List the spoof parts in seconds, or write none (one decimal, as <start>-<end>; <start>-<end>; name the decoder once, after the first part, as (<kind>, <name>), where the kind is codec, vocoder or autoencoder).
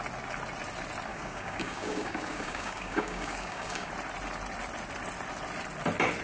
1.1-3.9 (codec, DAC)